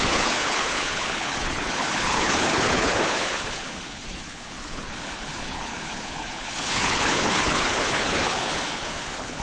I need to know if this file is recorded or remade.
remade